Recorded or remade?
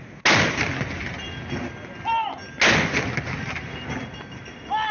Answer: recorded